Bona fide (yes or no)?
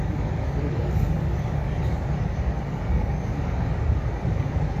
no